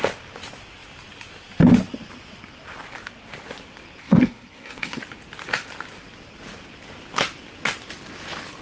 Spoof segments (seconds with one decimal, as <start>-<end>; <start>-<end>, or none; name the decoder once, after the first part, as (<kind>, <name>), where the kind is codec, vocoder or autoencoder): 4.0-5.0 (codec, SNAC)